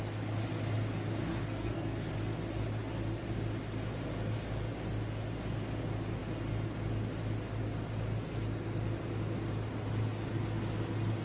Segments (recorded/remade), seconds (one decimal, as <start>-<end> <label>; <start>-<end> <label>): 0.0-1.3 recorded; 1.3-2.1 remade; 2.1-11.2 recorded